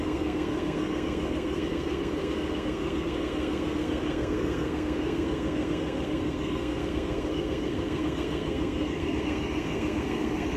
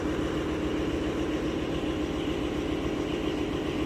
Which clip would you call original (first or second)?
second